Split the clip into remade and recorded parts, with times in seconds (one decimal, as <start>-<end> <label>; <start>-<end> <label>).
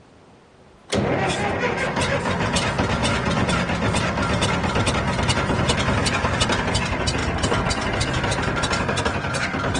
0.0-3.0 recorded; 3.0-3.5 remade; 3.5-9.8 recorded